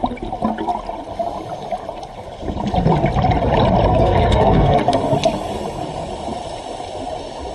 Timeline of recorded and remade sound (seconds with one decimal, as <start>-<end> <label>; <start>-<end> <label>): 0.0-3.9 recorded; 3.9-4.8 remade; 4.8-7.5 recorded